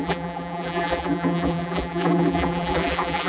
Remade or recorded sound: remade